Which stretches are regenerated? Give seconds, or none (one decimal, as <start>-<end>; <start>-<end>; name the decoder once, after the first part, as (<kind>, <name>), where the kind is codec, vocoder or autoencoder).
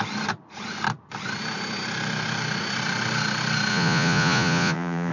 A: 3.7-5.1 (vocoder, Vocos)